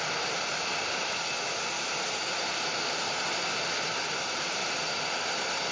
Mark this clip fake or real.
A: real